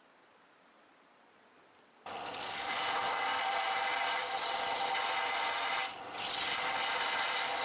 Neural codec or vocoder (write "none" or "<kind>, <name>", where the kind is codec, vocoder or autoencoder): none